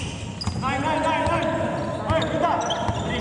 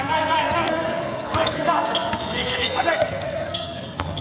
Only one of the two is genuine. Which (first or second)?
first